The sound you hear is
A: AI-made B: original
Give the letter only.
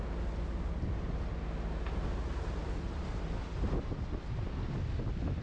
B